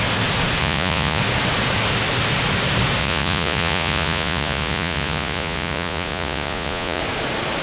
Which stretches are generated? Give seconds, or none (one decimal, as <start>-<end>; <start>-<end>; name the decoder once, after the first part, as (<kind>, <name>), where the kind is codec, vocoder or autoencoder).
0.6-1.2 (vocoder, Vocos); 3.0-7.0